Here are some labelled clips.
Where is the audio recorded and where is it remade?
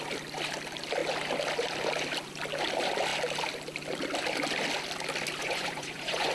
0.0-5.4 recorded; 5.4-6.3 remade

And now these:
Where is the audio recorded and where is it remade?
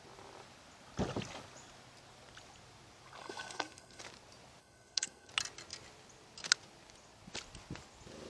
0.0-3.2 recorded; 3.2-4.0 remade; 4.0-4.6 recorded; 4.6-5.3 remade; 5.3-8.3 recorded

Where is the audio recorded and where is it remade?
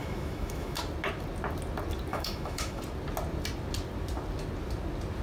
0.0-0.8 remade; 0.8-2.1 recorded; 2.1-2.8 remade; 2.8-5.2 recorded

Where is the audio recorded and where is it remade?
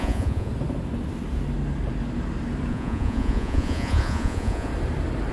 0.0-0.5 remade; 0.5-2.7 recorded; 2.7-4.7 remade; 4.7-5.3 recorded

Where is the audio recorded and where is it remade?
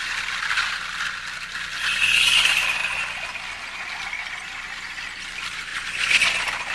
0.0-6.7 recorded